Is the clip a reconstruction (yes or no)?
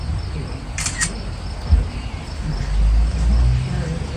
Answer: no